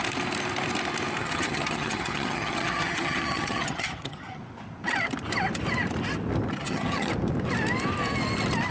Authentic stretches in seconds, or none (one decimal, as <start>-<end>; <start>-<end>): 0.0-1.2; 4.4-6.6; 7.1-8.7